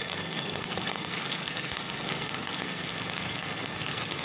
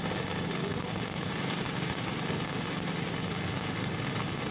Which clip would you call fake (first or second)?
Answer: first